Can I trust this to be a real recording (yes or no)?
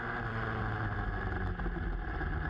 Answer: yes